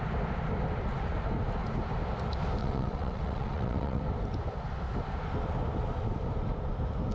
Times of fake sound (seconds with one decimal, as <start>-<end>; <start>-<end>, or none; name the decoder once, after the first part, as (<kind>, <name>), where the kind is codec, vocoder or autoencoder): 2.6-4.0 (vocoder, WaveNeXt)